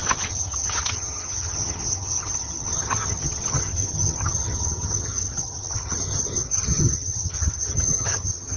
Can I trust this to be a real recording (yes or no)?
no